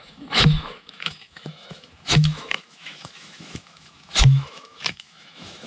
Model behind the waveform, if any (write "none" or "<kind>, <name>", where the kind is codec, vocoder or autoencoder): autoencoder, DAC-VAE